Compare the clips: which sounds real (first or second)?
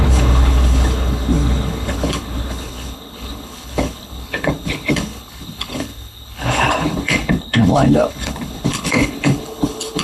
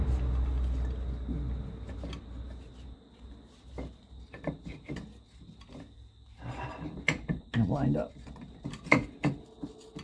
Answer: second